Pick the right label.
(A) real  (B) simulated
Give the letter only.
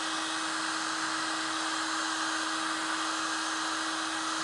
A